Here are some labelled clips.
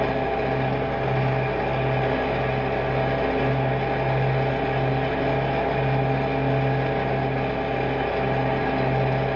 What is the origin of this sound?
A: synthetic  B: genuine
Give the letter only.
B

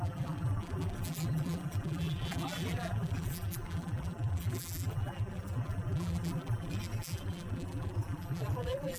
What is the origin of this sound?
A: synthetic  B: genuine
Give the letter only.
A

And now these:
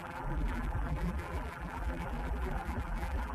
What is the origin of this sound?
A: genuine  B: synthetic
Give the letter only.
B